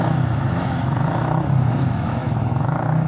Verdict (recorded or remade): remade